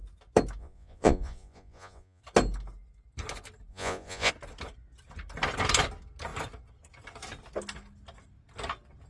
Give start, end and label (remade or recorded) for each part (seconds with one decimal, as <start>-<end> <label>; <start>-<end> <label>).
0.0-0.6 recorded; 0.6-2.2 remade; 2.2-3.7 recorded; 3.7-4.3 remade; 4.3-9.1 recorded